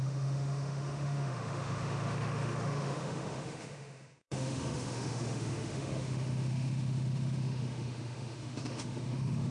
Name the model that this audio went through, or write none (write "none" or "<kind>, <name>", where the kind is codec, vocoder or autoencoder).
autoencoder, DAC-VAE